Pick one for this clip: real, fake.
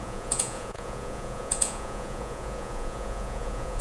fake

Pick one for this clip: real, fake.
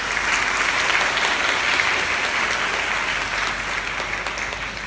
real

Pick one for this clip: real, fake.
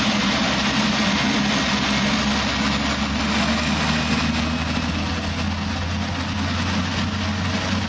real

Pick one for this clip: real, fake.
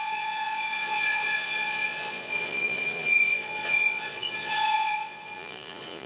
fake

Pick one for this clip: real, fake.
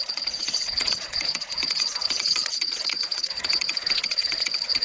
fake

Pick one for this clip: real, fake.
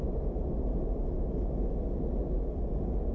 real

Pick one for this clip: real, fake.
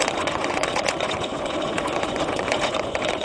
fake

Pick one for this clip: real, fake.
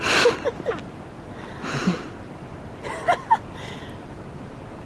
real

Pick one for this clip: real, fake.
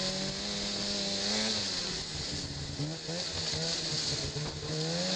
real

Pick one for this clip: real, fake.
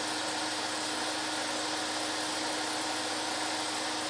real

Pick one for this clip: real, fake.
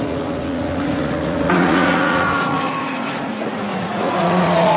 fake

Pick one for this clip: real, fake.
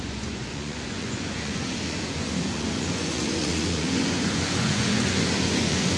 fake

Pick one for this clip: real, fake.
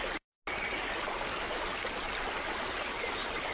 real